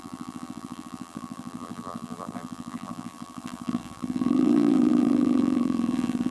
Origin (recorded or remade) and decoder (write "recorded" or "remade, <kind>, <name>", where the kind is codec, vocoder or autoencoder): remade, vocoder, BigVGAN v2